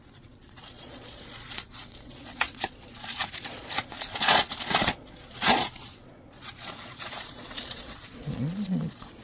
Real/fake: fake